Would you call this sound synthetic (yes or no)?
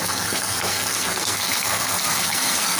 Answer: yes